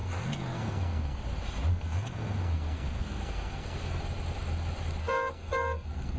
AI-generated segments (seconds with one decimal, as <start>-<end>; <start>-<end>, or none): 0.0-1.2; 1.7-4.0; 5.0-6.2